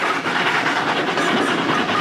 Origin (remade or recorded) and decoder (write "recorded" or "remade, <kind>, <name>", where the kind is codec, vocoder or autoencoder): recorded